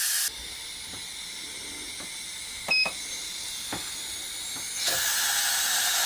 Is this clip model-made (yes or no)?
no